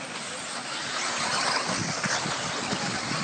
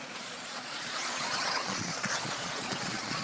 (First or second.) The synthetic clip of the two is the second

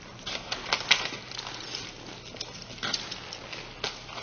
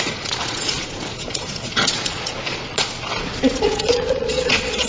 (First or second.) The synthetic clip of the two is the second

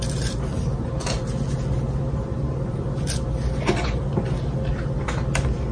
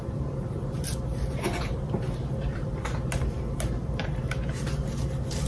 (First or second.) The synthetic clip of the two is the second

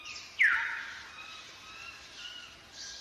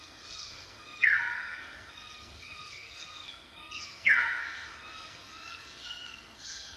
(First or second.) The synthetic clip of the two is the second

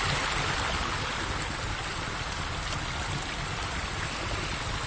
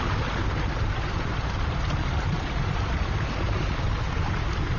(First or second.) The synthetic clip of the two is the second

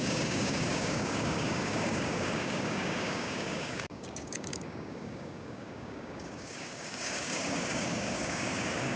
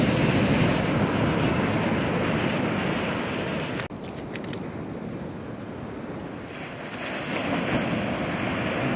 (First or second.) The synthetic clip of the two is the first